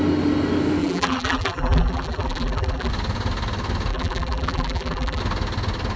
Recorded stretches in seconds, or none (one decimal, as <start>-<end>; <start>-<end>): 0.0-0.8; 2.9-3.9; 5.2-6.0

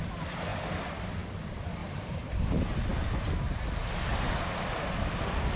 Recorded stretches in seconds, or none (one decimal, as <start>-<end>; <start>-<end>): 0.0-0.5; 1.1-1.8; 2.4-5.6

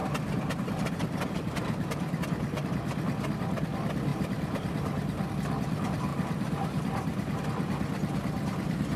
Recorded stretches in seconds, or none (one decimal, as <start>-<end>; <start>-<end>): 2.2-4.1; 5.3-6.1; 7.4-9.0

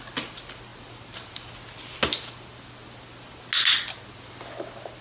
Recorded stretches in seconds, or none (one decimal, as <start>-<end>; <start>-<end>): 0.0-0.7; 1.5-5.0

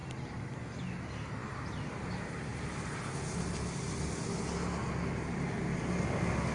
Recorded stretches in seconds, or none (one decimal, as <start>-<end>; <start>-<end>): 0.5-2.5; 4.0-6.5

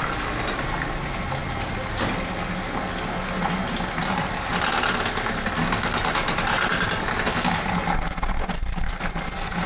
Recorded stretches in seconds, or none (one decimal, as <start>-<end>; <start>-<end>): 0.0-4.0; 5.5-6.0; 6.9-9.7

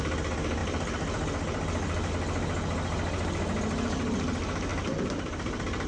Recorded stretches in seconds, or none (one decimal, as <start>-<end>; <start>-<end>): 0.0-0.6; 2.1-4.7